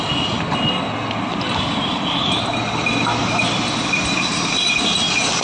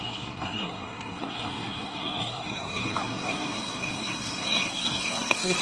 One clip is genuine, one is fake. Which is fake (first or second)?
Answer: second